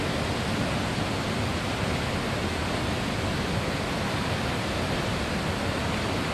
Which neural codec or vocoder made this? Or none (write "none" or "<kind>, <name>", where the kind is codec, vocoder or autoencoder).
none